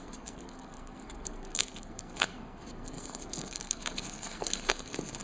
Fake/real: fake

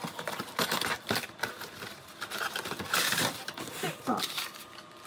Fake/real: real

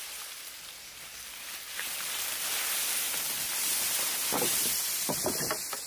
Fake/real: fake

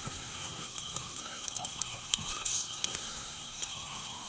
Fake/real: fake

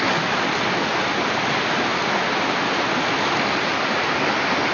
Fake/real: real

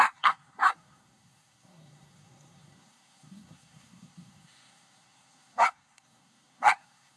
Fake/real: fake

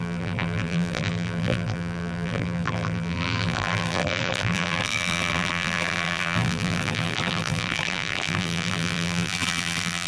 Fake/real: fake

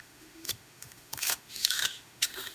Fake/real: fake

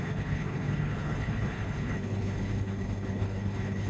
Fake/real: fake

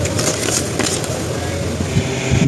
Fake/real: real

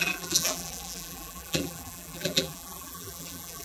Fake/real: fake